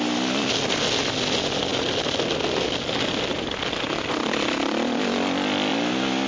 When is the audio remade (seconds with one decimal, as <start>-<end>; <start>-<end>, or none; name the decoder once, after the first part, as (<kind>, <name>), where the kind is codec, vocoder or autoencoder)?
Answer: none